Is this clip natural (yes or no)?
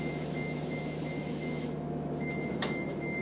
no